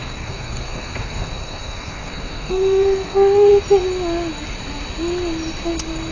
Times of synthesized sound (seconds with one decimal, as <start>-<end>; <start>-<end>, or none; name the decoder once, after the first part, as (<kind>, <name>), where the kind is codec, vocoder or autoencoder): 0.0-3.5 (codec, SNAC)